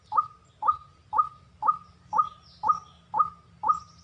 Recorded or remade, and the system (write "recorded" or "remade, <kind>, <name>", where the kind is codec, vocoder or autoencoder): recorded